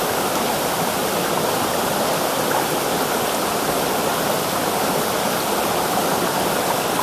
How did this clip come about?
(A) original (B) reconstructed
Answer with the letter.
A